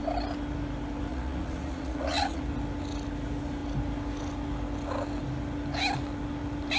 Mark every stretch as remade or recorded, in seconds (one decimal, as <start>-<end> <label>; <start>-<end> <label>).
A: 0.0-1.1 recorded; 1.1-2.4 remade; 2.4-6.8 recorded